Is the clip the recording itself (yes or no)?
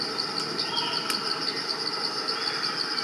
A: yes